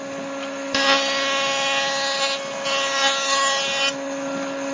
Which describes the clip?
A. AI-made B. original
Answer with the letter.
B